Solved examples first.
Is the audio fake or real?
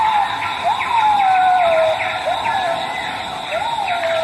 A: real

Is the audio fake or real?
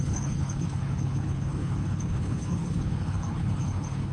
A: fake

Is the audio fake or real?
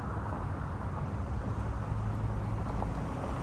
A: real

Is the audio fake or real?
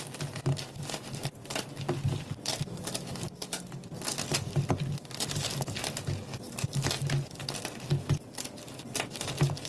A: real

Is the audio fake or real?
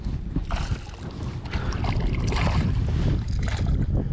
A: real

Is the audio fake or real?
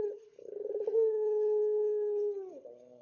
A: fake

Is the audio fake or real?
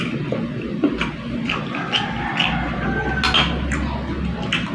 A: real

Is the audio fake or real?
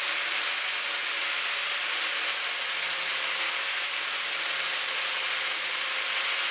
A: real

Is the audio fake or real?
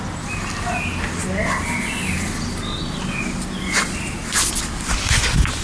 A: real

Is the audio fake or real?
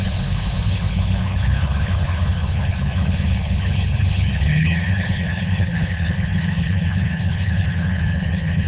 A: fake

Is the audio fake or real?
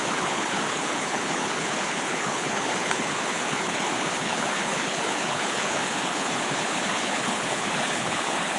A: fake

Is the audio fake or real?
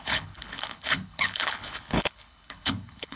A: fake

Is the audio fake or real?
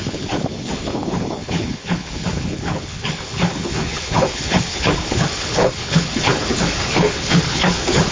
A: fake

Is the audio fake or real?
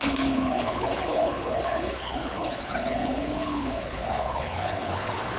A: fake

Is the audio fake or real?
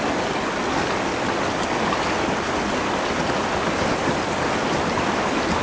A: real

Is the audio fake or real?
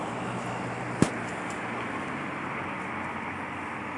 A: real